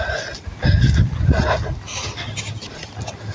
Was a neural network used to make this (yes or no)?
no